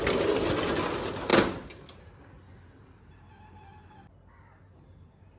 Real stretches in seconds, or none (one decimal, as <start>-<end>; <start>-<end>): 0.0-5.4